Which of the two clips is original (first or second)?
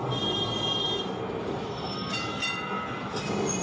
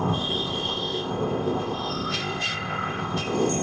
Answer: first